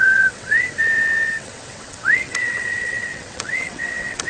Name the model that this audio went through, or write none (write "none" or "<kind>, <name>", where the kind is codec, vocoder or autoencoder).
vocoder, WaveNeXt